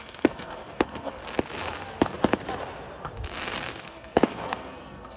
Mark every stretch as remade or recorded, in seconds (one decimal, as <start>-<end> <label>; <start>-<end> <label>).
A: 0.0-1.2 remade; 1.2-3.8 recorded; 3.8-5.2 remade